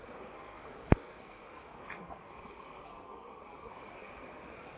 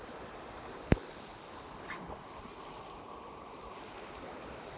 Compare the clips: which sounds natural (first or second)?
second